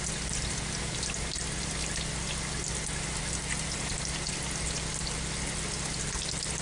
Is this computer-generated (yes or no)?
no